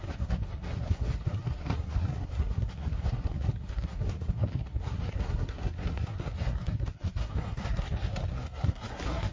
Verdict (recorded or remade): remade